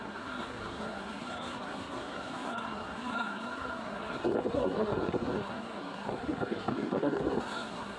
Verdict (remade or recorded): remade